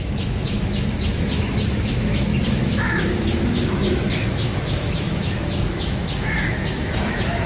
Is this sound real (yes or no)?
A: no